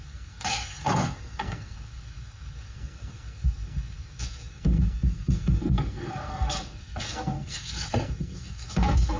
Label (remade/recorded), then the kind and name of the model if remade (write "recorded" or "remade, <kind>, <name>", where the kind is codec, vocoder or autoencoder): remade, codec, SNAC